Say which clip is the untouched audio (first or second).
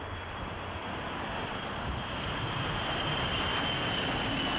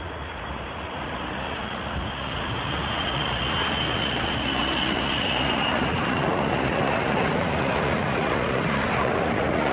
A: first